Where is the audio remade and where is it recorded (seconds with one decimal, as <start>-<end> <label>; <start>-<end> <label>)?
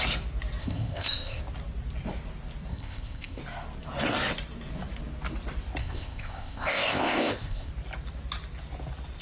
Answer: 0.0-0.6 recorded; 0.6-1.4 remade; 1.4-2.7 recorded; 2.7-3.4 remade; 3.4-5.8 recorded; 5.8-7.7 remade; 7.7-9.2 recorded